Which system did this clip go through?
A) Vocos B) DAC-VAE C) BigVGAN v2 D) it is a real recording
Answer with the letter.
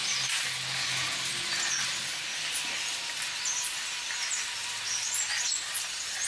D